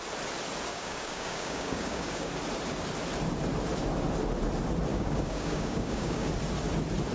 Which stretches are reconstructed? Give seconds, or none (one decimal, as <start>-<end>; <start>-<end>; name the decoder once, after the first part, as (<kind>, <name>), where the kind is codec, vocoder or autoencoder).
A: 0.7-2.3 (codec, DAC); 4.9-6.3